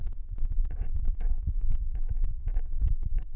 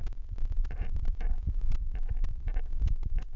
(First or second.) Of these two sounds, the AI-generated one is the first